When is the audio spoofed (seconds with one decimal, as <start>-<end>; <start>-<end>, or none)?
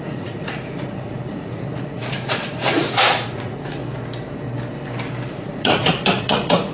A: 0.0-3.8; 5.3-6.7